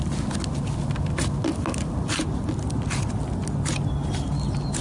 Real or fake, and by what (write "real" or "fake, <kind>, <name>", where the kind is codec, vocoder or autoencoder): real